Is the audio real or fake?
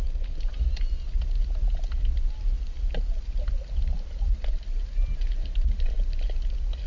real